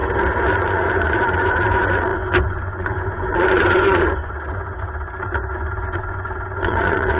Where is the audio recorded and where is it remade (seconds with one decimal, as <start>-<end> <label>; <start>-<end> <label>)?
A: 0.0-0.5 recorded; 0.5-7.2 remade